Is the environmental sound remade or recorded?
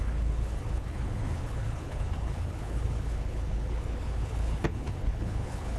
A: remade